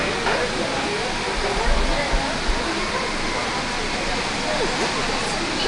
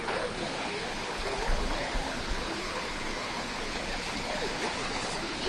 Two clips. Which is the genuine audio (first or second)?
first